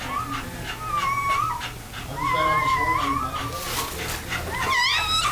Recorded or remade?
recorded